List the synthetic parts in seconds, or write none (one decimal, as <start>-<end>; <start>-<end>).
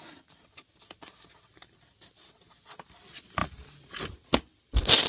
none